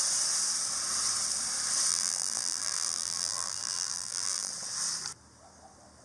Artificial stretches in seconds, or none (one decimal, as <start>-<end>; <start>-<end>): 1.9-4.5

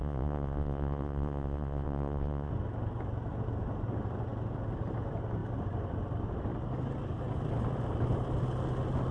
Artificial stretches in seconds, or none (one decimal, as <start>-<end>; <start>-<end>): 0.0-2.5